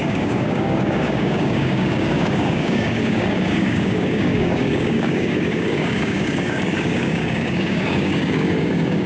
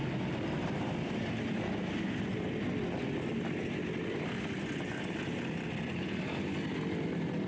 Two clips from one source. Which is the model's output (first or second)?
first